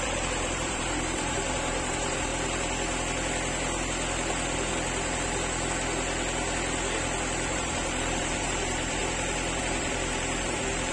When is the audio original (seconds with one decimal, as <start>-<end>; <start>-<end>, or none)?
2.3-7.5; 9.0-9.6